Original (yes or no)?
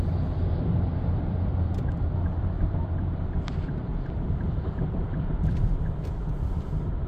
no